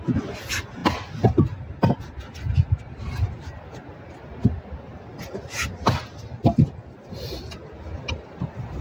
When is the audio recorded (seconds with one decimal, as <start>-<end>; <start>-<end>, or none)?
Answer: 0.0-8.8